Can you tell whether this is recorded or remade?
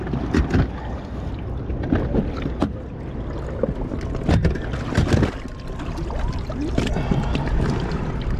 recorded